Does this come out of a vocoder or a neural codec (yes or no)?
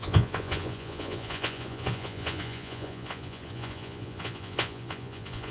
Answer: yes